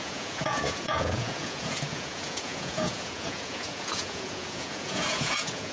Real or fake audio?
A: fake